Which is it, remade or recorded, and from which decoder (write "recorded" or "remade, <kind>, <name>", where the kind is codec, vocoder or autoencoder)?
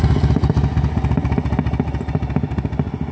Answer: recorded